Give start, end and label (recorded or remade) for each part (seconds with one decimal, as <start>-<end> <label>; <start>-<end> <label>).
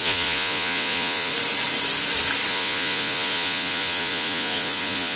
0.0-1.3 remade; 1.3-2.5 recorded; 2.5-5.2 remade